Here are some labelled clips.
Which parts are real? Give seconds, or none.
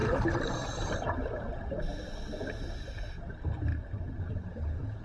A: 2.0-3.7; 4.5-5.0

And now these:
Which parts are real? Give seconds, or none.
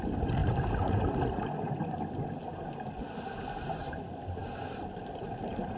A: 0.0-4.4; 4.9-5.8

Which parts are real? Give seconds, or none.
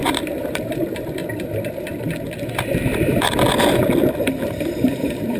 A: 1.2-4.4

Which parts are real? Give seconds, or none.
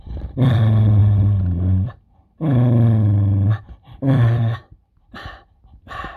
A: 4.6-6.2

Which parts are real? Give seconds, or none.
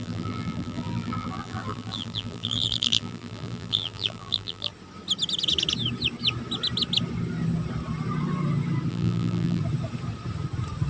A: 4.7-8.9; 9.6-10.9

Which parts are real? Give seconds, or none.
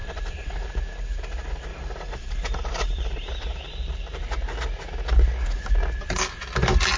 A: 0.7-1.7; 4.2-7.0